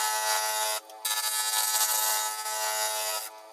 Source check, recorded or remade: recorded